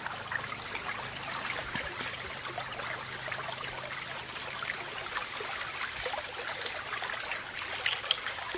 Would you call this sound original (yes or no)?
yes